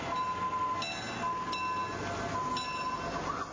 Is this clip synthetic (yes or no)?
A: no